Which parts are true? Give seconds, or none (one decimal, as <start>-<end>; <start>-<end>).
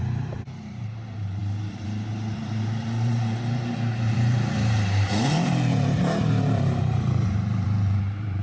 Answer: none